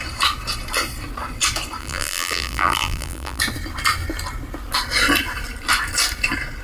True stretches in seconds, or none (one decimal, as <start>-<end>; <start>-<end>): 0.0-1.8; 3.4-6.6